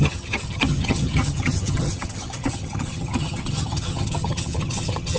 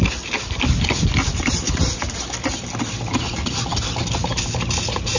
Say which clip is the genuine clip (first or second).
second